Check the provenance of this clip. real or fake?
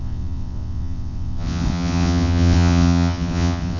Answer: fake